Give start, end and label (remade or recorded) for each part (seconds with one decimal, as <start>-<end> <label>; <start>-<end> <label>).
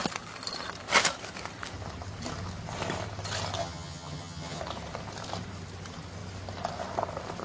0.0-3.6 recorded; 3.6-4.6 remade; 4.6-7.4 recorded